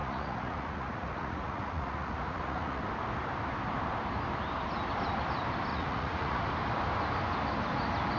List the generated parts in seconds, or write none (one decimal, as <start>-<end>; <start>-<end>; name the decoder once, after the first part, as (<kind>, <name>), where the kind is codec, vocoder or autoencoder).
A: 0.0-2.8 (vocoder, Vocos); 5.7-6.4